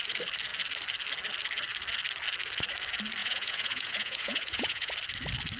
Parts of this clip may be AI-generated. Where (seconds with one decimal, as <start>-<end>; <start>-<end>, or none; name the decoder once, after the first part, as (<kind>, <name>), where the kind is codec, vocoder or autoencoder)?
3.2-4.9 (vocoder, Vocos)